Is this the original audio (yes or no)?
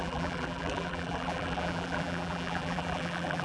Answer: no